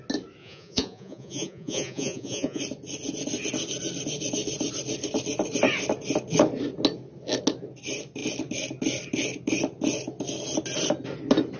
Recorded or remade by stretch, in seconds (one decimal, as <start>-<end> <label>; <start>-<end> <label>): 0.0-0.4 recorded; 0.4-2.6 remade; 2.6-11.6 recorded

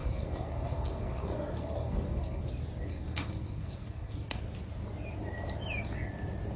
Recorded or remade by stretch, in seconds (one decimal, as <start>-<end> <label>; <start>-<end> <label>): 0.0-2.4 remade; 2.4-2.9 recorded; 2.9-4.4 remade; 4.4-6.6 recorded